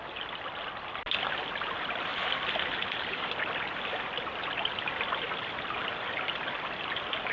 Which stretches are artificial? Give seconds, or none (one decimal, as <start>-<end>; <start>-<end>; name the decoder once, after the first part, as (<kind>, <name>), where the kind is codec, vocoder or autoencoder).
none